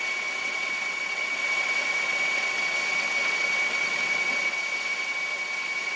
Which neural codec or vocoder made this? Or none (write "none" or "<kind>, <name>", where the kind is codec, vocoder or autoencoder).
vocoder, WaveNeXt